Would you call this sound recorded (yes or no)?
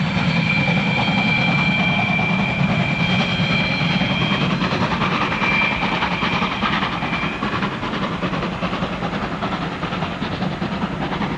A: yes